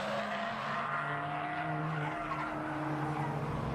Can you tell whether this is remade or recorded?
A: recorded